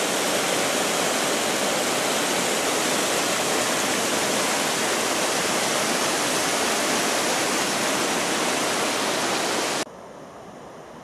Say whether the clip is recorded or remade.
recorded